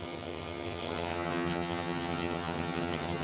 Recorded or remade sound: remade